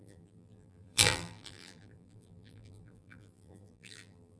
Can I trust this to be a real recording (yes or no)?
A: no